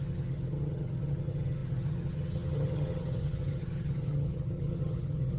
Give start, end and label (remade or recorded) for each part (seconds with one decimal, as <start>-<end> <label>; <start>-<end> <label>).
0.0-5.4 remade